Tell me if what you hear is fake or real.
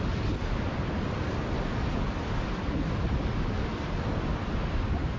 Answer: real